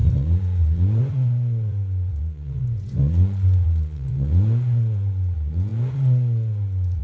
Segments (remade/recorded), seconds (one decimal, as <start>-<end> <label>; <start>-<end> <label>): 0.0-7.0 remade